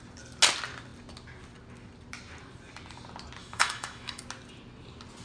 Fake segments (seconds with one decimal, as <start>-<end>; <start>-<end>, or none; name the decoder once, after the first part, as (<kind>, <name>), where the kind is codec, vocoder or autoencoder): 3.4-4.2 (autoencoder, DAC-VAE)